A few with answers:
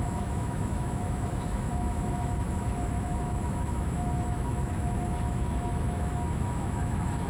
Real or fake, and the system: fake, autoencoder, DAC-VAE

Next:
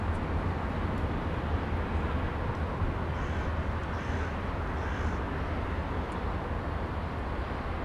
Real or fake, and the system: real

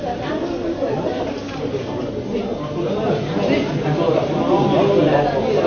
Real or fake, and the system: real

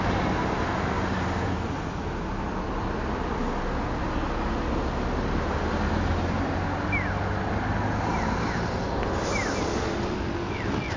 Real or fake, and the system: real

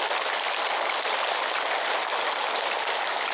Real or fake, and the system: real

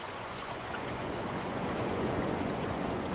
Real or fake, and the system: fake, vocoder, Vocos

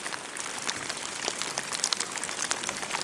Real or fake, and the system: real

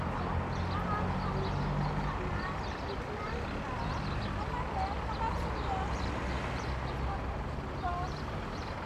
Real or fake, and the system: real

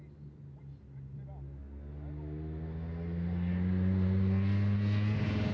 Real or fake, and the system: real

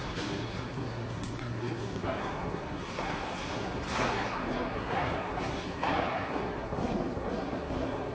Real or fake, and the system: fake, codec, SNAC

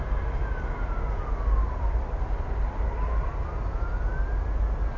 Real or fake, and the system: real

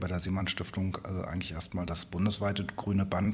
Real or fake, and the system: fake, vocoder, BigVGAN v2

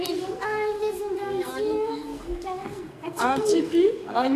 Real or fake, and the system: fake, codec, SNAC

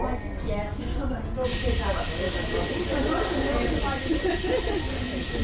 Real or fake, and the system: real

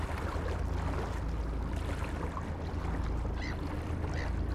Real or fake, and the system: real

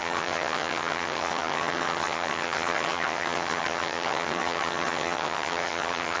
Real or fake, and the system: fake, vocoder, HiFi-GAN